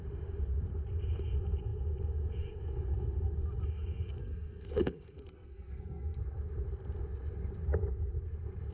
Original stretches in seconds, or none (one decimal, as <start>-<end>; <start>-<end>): 0.0-4.2; 6.2-8.7